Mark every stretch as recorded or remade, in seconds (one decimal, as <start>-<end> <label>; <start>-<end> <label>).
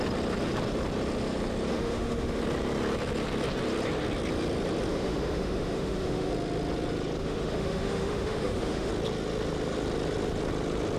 0.0-1.7 recorded; 1.7-2.4 remade; 2.4-4.9 recorded; 4.9-6.3 remade; 6.3-7.2 recorded; 7.2-8.9 remade; 8.9-11.0 recorded